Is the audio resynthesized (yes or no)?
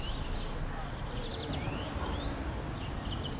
no